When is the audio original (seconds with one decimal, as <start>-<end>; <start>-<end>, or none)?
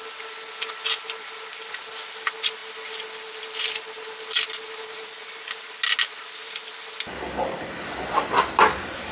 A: 0.0-9.1